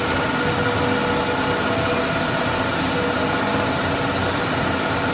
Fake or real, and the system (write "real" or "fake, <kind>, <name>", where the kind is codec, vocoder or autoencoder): real